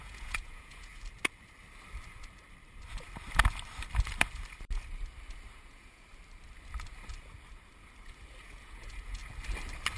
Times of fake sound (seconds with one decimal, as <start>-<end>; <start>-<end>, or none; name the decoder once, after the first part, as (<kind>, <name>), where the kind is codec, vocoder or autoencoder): 0.0-0.9 (vocoder, Vocos); 5.5-6.1; 8.4-9.2